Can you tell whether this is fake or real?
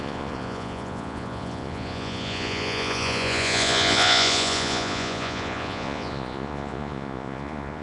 fake